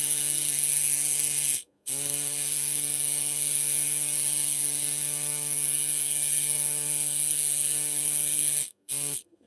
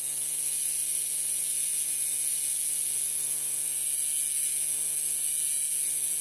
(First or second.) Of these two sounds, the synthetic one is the first